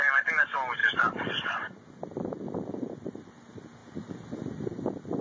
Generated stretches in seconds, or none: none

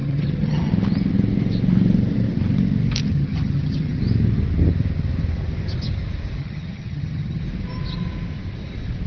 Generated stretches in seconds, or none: 0.0-0.7 (vocoder, HiFi-GAN); 3.1-4.0; 6.4-7.4

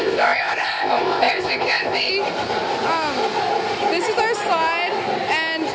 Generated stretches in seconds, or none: 0.0-2.1 (codec, ZipCodec)

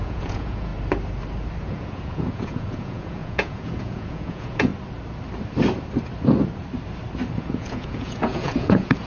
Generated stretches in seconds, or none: 0.0-0.7 (vocoder, Vocos); 1.6-4.7; 7.4-9.1

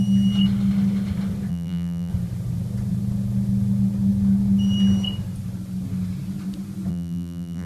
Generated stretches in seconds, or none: 1.5-2.1 (vocoder, BigVGAN v2); 6.9-7.7

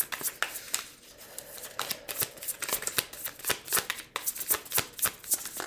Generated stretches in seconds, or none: 1.9-3.9 (vocoder, BigVGAN v2)

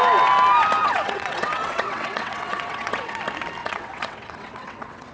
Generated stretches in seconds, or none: 0.8-3.2 (vocoder, WaveNeXt); 3.6-5.1

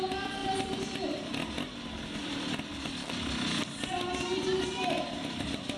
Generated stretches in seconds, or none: 2.2-2.7 (vocoder, BigVGAN v2)